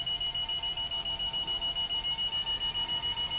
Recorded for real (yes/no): yes